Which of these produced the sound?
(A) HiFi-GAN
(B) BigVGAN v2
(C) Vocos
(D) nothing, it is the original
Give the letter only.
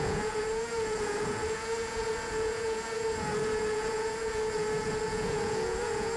C